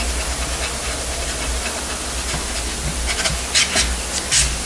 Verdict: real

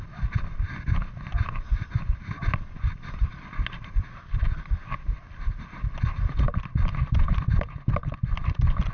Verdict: real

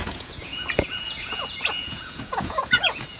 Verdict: fake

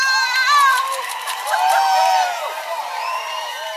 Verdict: fake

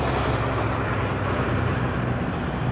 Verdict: real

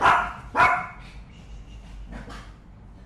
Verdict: real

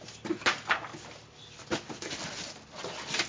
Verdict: real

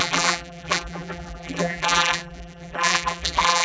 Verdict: fake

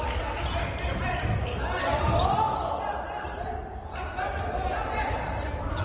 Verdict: real